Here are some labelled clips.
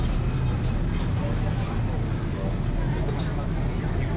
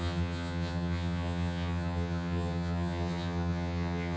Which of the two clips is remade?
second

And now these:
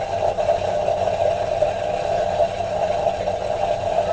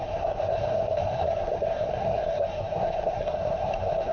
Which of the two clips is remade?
second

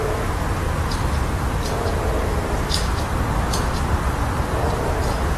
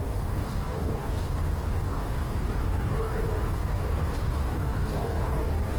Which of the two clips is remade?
second